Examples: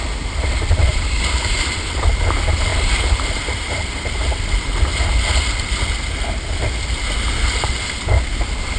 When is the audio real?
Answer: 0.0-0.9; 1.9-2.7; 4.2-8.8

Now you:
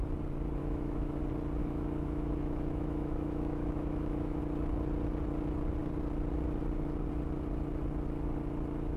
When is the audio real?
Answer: 0.0-0.6; 1.2-1.6; 4.4-9.0

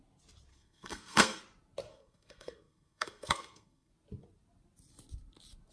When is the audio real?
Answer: 0.0-0.5; 1.4-1.9; 3.9-5.7

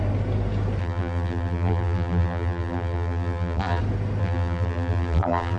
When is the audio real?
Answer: 0.0-0.8; 3.8-4.2